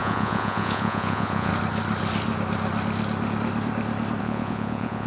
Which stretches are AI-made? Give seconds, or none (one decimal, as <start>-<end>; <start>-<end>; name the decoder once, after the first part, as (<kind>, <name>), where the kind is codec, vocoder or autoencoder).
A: 0.0-1.5 (vocoder, Vocos); 4.2-5.1